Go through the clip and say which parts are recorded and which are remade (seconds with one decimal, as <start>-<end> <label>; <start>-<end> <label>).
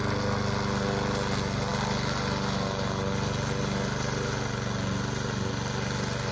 0.0-6.3 recorded